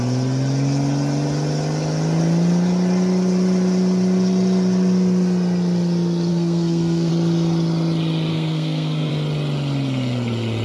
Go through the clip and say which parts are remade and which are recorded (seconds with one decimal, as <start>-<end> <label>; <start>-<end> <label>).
0.0-6.3 recorded; 6.3-7.1 remade; 7.1-8.3 recorded; 8.3-9.1 remade; 9.1-10.6 recorded